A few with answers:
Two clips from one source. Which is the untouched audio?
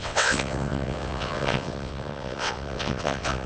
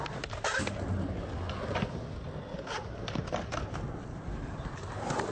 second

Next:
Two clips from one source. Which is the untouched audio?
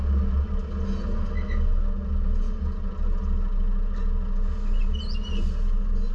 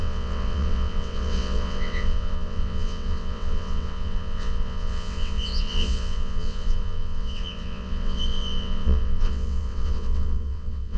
first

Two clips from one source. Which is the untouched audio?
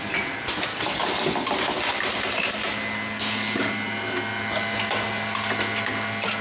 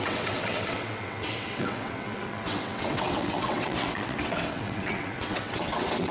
first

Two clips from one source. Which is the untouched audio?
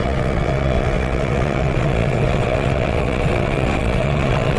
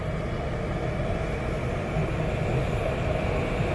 second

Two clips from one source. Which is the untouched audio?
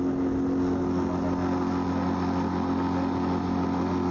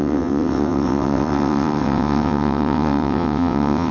first